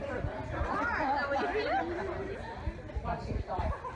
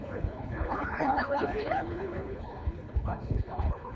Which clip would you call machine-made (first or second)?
second